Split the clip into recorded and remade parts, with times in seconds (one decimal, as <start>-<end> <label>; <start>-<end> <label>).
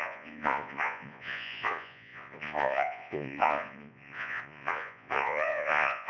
0.0-6.1 remade